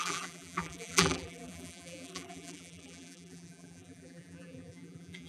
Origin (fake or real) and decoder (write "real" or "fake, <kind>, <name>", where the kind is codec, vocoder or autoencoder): fake, vocoder, BigVGAN v2